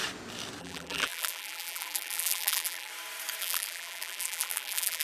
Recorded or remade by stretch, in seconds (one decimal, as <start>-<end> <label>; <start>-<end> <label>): 0.0-0.6 recorded; 0.6-2.9 remade; 2.9-3.4 recorded; 3.4-5.0 remade